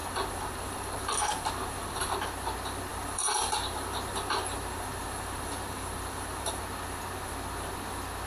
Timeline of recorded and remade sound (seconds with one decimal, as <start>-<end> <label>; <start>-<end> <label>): 0.0-2.0 remade; 2.0-2.9 recorded; 2.9-6.6 remade; 6.6-8.3 recorded